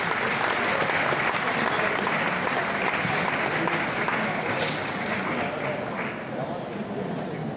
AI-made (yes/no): no